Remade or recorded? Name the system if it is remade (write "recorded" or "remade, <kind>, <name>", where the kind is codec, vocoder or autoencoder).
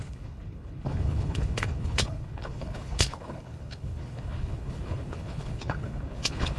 remade, codec, HILCodec